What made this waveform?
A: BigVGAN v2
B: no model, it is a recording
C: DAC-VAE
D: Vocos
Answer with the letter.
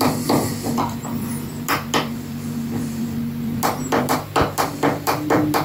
A